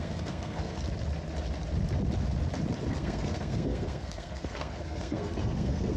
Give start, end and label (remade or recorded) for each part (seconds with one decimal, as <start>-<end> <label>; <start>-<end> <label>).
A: 0.0-0.8 remade; 0.8-2.9 recorded; 2.9-6.0 remade